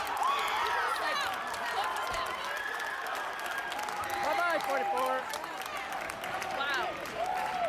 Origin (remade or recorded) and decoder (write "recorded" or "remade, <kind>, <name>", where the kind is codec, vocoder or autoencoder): recorded